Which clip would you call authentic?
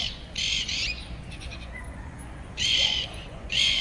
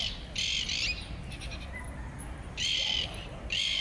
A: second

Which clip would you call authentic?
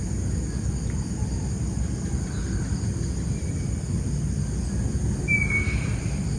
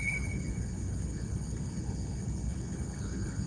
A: first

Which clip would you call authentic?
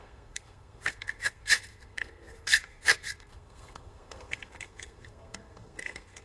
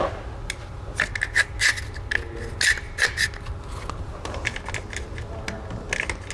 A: second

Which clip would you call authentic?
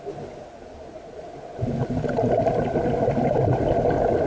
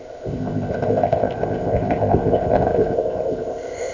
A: first